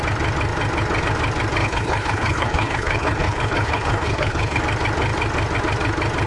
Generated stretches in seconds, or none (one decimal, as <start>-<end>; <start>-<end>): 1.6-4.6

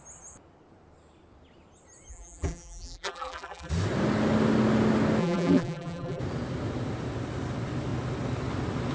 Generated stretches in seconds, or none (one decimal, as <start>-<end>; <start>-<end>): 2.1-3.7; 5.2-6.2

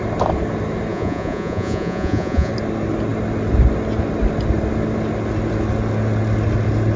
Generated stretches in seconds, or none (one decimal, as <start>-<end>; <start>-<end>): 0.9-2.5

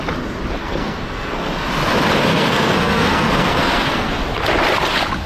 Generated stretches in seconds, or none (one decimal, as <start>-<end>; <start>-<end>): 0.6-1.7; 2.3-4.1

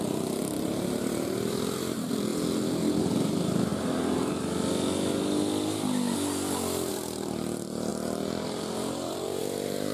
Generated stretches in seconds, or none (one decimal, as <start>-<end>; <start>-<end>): 0.0-2.3; 3.0-3.7; 6.9-9.9

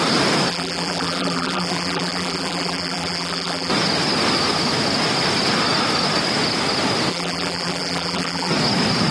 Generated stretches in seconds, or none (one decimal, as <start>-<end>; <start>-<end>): 0.5-3.7; 7.1-8.5

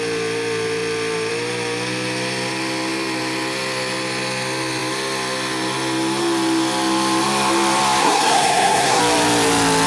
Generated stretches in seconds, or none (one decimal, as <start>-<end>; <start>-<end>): 8.0-9.0

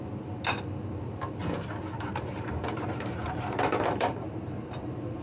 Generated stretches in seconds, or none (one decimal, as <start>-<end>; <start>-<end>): 2.1-4.4